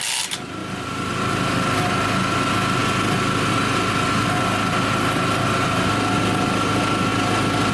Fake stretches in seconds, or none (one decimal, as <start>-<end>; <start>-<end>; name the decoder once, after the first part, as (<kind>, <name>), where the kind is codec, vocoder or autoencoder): 0.6-1.1 (vocoder, BigVGAN v2)